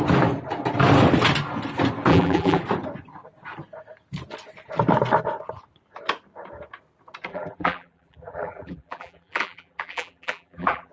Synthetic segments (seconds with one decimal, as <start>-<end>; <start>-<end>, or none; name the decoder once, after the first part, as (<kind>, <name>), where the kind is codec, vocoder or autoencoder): 2.1-2.6 (vocoder, BigVGAN v2); 7.3-10.9